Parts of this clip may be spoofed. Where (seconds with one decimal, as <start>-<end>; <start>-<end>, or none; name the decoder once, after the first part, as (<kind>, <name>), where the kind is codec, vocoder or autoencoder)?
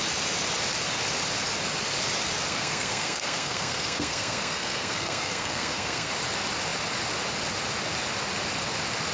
2.5-6.1 (codec, SNAC)